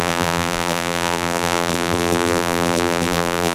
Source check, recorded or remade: remade